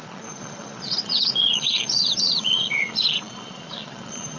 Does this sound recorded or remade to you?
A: remade